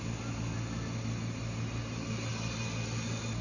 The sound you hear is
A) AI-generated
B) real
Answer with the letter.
B